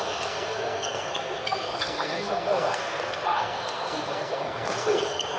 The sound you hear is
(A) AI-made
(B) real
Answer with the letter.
A